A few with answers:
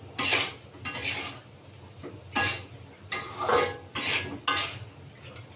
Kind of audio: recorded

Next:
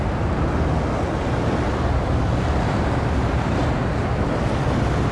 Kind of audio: recorded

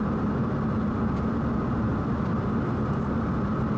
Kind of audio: recorded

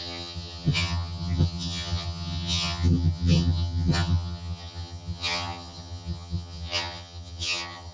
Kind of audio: remade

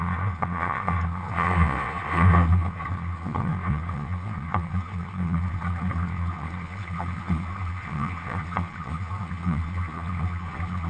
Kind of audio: remade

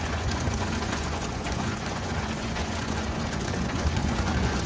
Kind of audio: remade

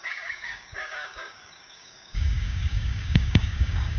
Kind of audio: remade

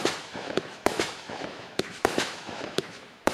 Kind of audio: remade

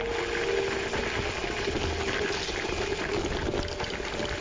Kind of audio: recorded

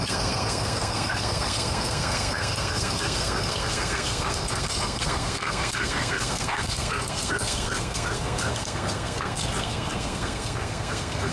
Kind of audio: remade